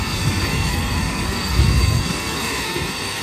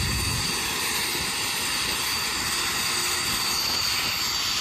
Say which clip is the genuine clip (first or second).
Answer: second